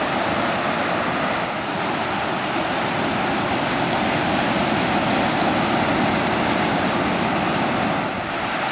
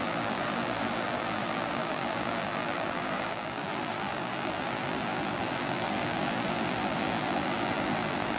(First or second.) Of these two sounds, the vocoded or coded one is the second